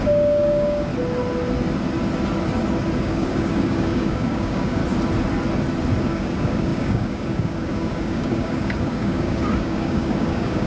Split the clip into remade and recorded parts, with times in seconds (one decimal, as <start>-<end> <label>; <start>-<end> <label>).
0.0-0.9 remade; 0.9-3.0 recorded; 3.0-4.8 remade; 4.8-6.0 recorded; 6.0-10.7 remade